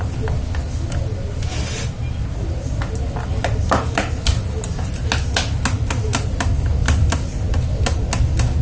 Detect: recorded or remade recorded